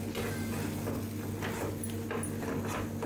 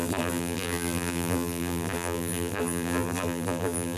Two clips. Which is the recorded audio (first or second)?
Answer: first